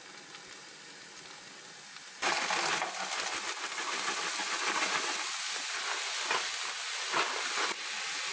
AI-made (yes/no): no